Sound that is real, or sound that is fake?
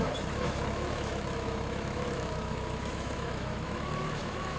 fake